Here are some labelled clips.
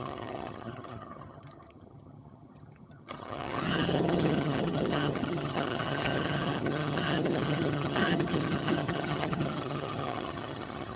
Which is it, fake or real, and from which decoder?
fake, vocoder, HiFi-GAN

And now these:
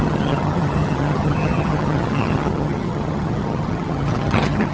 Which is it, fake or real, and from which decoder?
fake, vocoder, HiFi-GAN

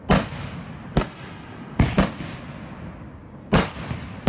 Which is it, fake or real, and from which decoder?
real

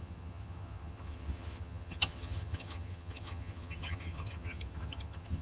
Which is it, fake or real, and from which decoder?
fake, vocoder, HiFi-GAN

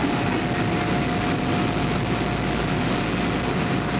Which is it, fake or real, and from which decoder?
real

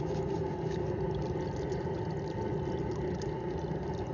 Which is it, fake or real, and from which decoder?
real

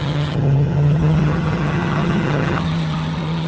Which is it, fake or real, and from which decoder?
fake, vocoder, HiFi-GAN